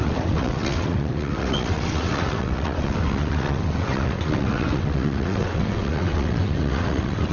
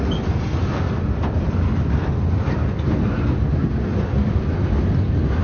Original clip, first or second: second